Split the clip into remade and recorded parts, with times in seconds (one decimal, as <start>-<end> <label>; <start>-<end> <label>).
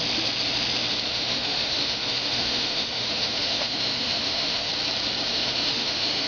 0.0-1.1 recorded; 1.1-4.7 remade; 4.7-5.3 recorded; 5.3-6.3 remade